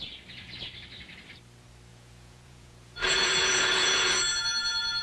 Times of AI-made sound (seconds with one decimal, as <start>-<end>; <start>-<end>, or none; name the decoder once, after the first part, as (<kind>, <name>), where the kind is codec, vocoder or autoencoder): 1.9-4.2 (vocoder, Vocos)